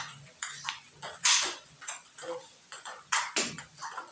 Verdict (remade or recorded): remade